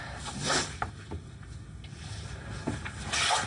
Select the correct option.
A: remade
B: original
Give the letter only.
B